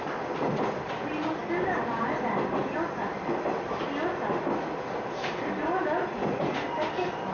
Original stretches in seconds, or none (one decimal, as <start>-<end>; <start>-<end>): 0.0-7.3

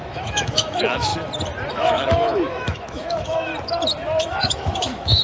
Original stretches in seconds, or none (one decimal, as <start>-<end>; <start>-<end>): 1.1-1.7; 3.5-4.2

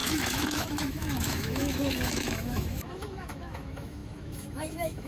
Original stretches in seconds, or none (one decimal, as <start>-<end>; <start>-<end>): none